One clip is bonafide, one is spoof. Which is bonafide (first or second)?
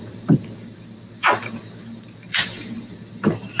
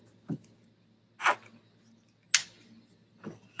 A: second